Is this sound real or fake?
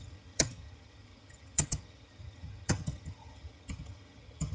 fake